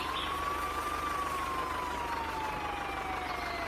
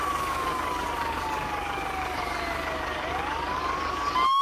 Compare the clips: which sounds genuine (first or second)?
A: first